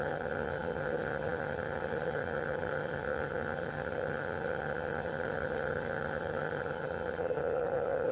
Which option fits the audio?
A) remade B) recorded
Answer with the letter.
A